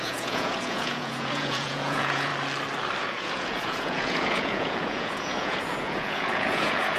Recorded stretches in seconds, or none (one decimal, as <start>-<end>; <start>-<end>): 2.3-3.0